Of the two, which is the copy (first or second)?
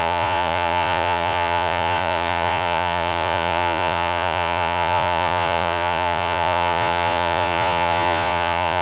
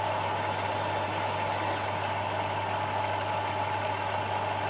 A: first